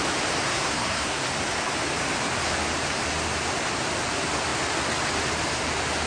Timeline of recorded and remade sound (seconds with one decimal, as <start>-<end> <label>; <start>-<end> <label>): 0.0-0.4 recorded; 0.4-1.2 remade; 1.2-6.1 recorded